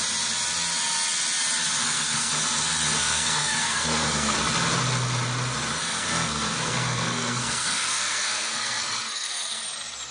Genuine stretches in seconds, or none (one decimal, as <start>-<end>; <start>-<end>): 0.0-1.8; 2.3-3.0; 4.4-5.8; 9.6-10.1